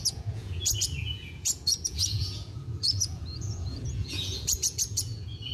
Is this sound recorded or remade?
remade